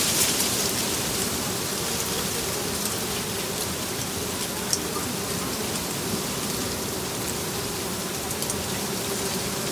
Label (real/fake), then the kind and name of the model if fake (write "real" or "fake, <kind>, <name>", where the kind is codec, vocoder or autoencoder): real